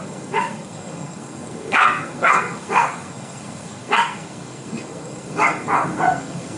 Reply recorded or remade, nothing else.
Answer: remade